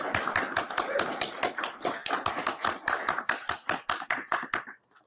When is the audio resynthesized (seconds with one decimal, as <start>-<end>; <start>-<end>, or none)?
none